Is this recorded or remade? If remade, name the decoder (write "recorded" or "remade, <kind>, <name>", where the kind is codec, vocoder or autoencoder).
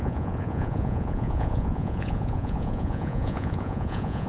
remade, vocoder, Vocos